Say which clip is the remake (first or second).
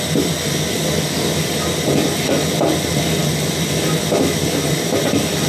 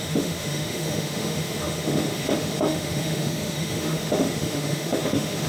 second